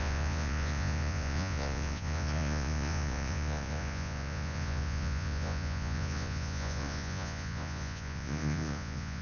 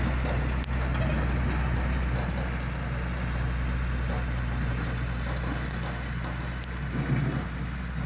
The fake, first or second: first